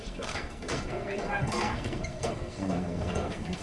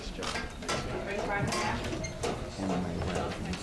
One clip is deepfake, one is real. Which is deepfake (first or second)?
first